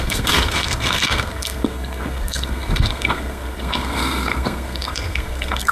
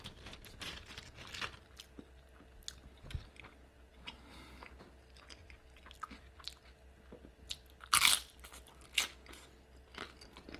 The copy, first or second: first